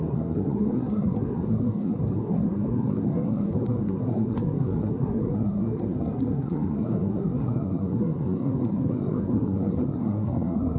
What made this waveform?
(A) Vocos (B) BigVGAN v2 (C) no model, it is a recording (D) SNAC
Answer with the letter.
D